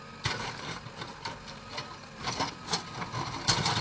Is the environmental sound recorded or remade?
recorded